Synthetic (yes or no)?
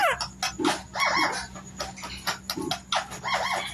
no